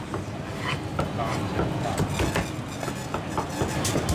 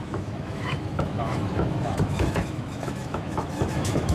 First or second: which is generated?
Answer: second